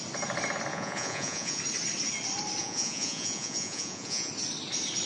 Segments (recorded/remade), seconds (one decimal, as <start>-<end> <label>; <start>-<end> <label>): 0.0-0.7 recorded; 0.7-1.6 remade; 1.6-2.6 recorded; 2.6-4.3 remade; 4.3-5.1 recorded